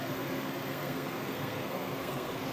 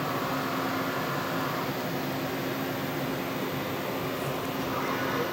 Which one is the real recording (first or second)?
second